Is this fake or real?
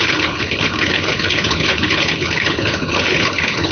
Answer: fake